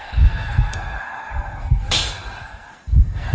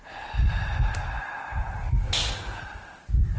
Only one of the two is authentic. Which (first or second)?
second